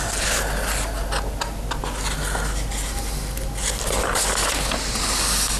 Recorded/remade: recorded